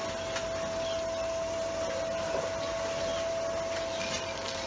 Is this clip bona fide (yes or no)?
yes